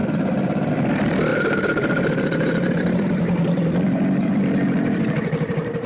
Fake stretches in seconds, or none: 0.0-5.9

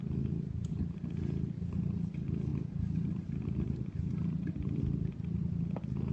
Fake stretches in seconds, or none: 2.5-4.8